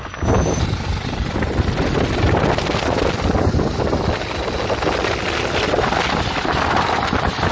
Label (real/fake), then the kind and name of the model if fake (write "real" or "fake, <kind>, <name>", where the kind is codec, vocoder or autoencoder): real